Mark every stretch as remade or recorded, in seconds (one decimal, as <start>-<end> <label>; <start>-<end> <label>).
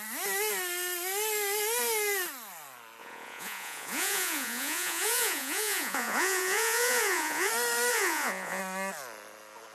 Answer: 0.0-3.0 recorded; 3.0-7.5 remade; 7.5-7.9 recorded; 7.9-8.6 remade; 8.6-9.7 recorded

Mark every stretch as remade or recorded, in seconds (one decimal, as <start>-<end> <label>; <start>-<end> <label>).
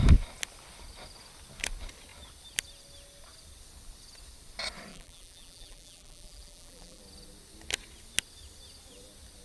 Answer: 0.0-4.9 recorded; 4.9-7.0 remade; 7.0-9.4 recorded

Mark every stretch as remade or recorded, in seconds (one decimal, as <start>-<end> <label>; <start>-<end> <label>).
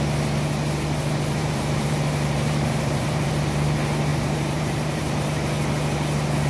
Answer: 0.0-1.4 recorded; 1.4-3.3 remade; 3.3-4.1 recorded; 4.1-5.2 remade; 5.2-6.5 recorded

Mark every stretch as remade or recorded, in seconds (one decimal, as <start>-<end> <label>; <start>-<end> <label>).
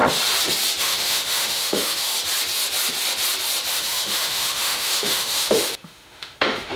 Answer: 0.0-0.8 recorded; 0.8-2.1 remade; 2.1-3.7 recorded; 3.7-6.8 remade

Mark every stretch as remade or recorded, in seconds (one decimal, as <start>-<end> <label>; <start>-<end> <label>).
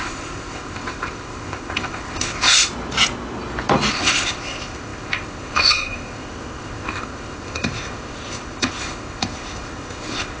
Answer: 0.0-2.7 remade; 2.7-3.9 recorded; 3.9-10.4 remade